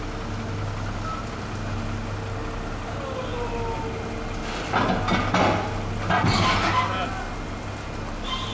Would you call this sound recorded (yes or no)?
yes